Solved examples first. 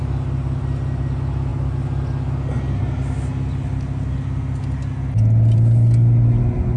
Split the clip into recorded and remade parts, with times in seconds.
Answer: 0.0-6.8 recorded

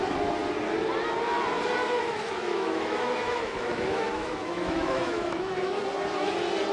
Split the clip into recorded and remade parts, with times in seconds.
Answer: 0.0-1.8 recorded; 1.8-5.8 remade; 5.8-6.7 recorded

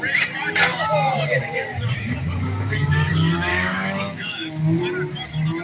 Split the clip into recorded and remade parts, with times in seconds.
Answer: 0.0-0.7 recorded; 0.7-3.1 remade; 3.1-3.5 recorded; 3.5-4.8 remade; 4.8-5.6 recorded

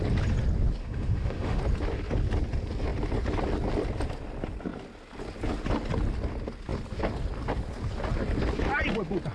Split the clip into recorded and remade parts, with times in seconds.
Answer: 0.0-0.8 recorded; 0.8-1.6 remade; 1.6-9.3 recorded

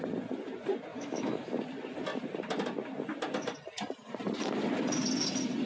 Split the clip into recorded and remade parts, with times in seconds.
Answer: 0.0-0.9 recorded; 0.9-1.6 remade; 1.6-5.7 recorded

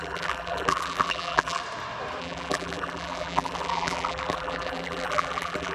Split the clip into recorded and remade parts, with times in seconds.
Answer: 0.0-1.6 remade; 1.6-2.2 recorded; 2.2-5.7 remade